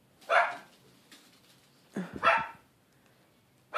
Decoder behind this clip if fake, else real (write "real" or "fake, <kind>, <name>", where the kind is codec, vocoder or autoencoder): real